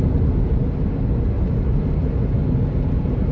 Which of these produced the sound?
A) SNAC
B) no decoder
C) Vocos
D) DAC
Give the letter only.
B